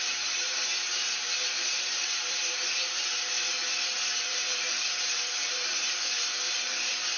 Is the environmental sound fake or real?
fake